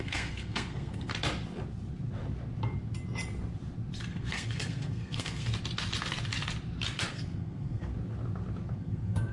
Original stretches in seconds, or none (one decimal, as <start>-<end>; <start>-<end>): 1.1-4.1; 5.5-7.1; 7.9-8.7